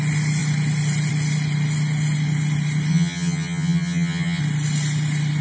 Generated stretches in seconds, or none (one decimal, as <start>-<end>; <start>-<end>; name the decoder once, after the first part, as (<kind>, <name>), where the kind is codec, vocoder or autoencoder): 2.9-4.4 (vocoder, HiFi-GAN)